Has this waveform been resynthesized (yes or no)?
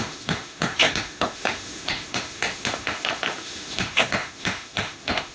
yes